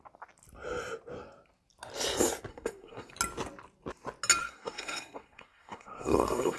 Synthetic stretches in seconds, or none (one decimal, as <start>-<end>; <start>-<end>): 2.5-3.1; 4.4-6.6